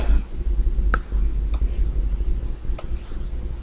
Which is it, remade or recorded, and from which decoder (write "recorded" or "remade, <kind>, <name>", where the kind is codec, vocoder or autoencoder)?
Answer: recorded